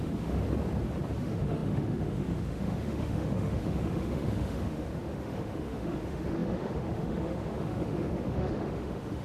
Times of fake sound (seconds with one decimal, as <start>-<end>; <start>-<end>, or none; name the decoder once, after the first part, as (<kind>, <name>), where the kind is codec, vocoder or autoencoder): 0.0-0.4 (autoencoder, DAC-VAE); 1.2-9.2